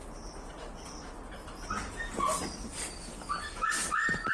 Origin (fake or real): real